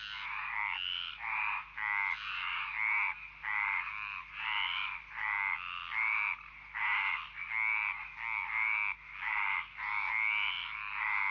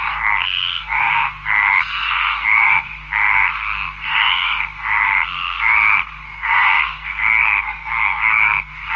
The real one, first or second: first